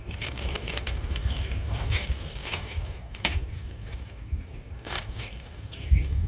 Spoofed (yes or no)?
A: yes